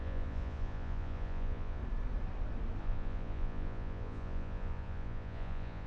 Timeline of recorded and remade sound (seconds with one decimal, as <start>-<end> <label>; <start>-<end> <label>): 0.0-1.8 remade; 1.8-2.8 recorded; 2.8-5.9 remade